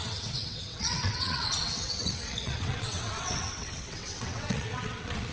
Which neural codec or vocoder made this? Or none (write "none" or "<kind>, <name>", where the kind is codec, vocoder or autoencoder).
vocoder, WaveNeXt